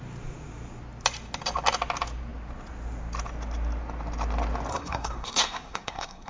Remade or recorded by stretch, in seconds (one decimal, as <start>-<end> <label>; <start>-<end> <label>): 0.0-4.7 recorded; 4.7-6.3 remade